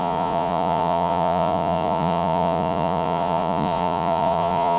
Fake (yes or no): yes